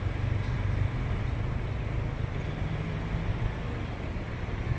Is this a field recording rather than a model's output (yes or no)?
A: yes